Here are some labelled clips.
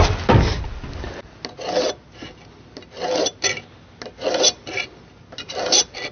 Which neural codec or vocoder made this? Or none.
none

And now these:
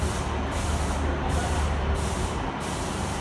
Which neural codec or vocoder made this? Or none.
none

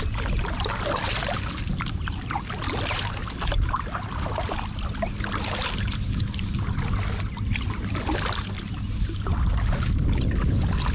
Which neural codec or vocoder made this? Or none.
none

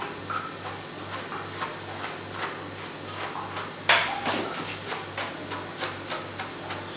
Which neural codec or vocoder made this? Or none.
none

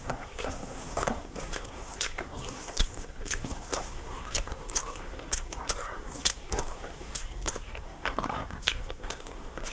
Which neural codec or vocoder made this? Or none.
codec, SNAC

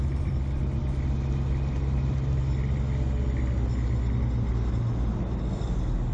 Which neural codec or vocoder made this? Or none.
none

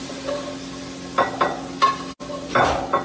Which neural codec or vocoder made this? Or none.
none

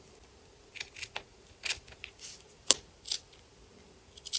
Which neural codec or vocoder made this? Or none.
none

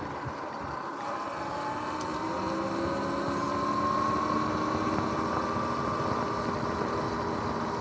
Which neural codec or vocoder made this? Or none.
none